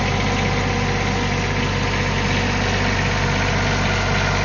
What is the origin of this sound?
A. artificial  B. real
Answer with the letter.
B